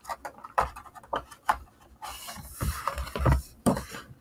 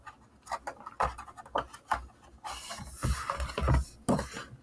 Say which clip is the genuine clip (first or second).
second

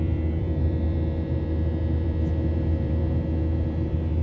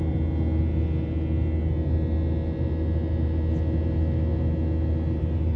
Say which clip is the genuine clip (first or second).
second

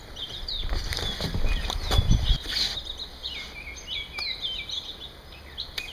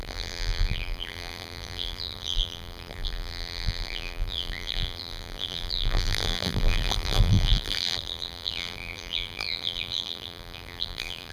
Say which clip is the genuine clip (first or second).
first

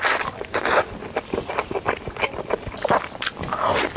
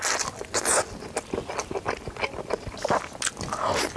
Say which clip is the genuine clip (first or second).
second